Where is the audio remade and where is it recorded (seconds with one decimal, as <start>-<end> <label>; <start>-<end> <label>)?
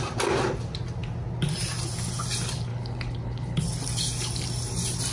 0.0-2.7 recorded; 2.7-3.6 remade; 3.6-5.1 recorded